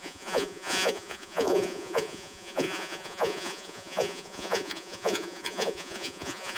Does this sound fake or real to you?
fake